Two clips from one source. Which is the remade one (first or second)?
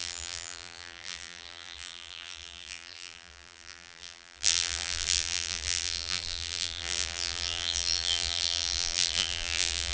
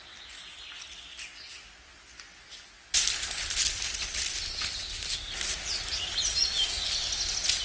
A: first